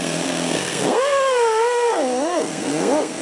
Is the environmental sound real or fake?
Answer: fake